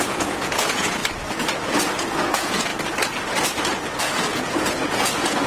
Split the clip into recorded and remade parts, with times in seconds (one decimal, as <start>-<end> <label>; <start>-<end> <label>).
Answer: 0.0-1.0 remade; 1.0-2.0 recorded; 2.0-2.7 remade; 2.7-4.0 recorded; 4.0-5.5 remade